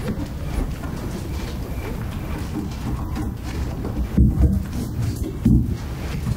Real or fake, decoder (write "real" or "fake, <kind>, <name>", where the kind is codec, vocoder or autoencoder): real